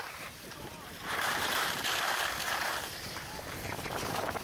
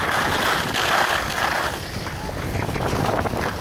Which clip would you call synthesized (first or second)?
first